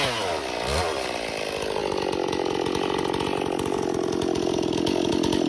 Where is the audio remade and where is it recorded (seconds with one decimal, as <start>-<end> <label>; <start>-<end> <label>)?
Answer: 0.0-5.5 recorded